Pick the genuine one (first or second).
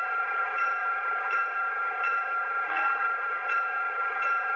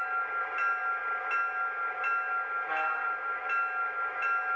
second